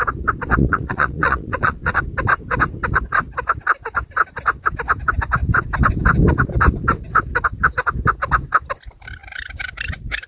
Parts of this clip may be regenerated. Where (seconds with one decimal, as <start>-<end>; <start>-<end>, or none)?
0.5-2.0